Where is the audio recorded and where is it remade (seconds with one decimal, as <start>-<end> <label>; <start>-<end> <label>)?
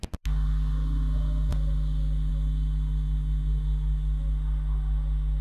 0.0-5.4 recorded